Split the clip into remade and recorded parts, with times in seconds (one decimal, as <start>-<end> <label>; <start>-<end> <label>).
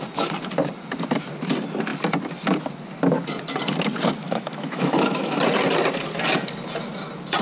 0.0-4.2 recorded; 4.2-5.4 remade; 5.4-7.4 recorded